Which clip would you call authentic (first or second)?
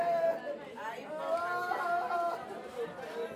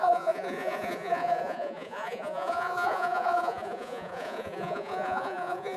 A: first